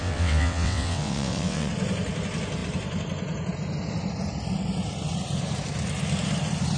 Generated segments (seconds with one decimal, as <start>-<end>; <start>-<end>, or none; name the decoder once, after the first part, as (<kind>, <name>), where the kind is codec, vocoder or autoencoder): 0.0-1.7 (vocoder, WaveNeXt)